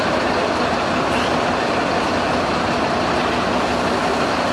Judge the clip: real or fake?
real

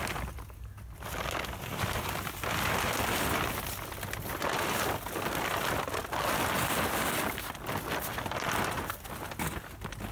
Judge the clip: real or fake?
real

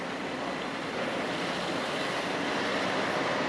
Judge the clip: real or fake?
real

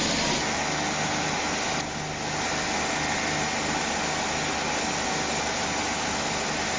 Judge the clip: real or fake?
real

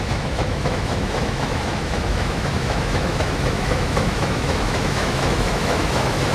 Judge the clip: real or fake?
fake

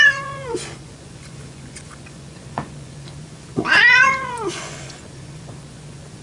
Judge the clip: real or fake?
fake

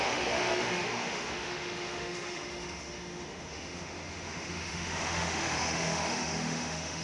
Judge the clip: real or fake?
fake